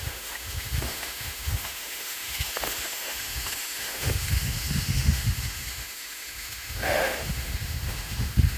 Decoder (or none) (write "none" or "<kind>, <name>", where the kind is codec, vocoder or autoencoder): autoencoder, DAC-VAE